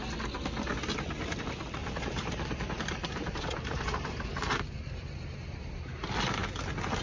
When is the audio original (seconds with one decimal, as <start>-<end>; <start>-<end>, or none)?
0.0-1.8; 6.0-7.0